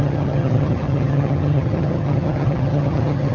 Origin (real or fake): fake